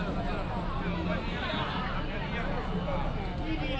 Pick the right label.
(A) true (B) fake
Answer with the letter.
A